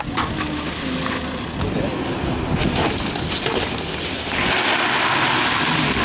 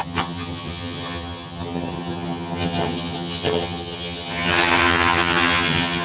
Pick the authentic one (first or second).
first